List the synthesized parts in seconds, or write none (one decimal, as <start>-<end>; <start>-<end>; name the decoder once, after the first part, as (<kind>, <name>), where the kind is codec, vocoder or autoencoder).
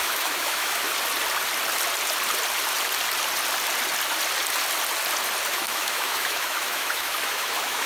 0.0-0.9 (autoencoder, DAC-VAE); 5.5-7.9